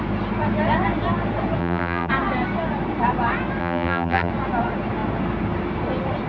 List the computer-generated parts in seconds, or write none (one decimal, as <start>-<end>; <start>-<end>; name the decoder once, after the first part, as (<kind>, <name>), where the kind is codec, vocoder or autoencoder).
1.6-2.1 (vocoder, BigVGAN v2); 3.6-4.3